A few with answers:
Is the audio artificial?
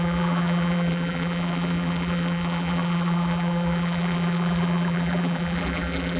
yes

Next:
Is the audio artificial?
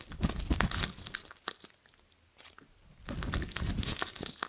no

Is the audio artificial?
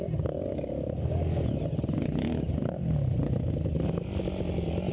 no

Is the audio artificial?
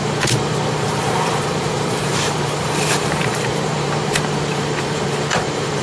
yes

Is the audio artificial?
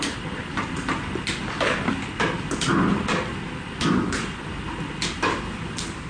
no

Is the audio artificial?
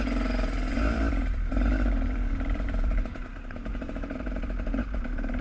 yes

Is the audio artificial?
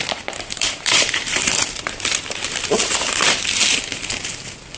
yes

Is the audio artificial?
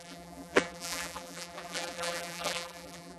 yes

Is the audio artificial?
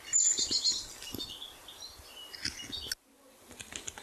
no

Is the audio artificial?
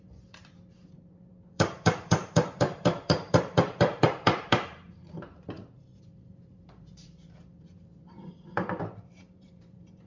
yes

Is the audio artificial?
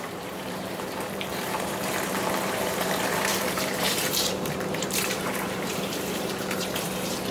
yes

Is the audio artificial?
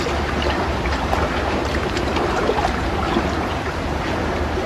yes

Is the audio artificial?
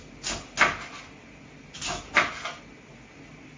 no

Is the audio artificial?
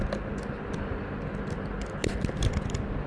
no